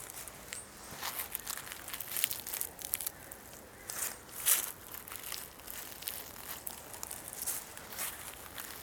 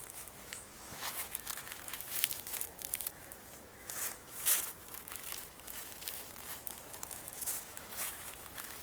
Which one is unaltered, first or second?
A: first